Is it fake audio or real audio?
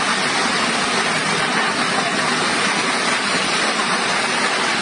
real